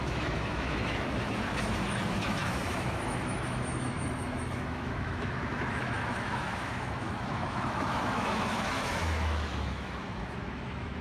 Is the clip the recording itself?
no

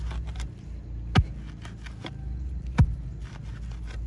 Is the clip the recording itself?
yes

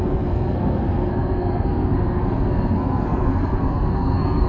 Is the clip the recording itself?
no